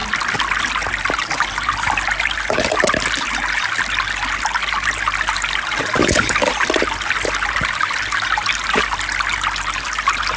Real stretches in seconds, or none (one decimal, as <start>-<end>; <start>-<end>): 0.0-10.4